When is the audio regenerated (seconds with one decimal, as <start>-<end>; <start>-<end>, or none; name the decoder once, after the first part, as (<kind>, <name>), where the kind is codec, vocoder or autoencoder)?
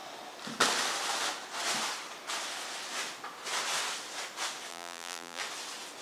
4.7-5.4 (vocoder, BigVGAN v2)